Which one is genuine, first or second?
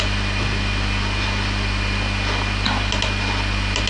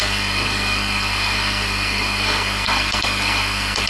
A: first